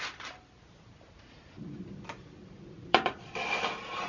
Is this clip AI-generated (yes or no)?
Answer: yes